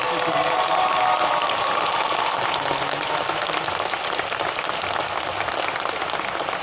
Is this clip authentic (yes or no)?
yes